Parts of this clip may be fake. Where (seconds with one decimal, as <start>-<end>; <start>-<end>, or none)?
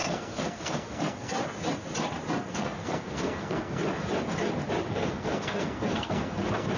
0.0-1.4; 2.5-3.8; 4.9-6.8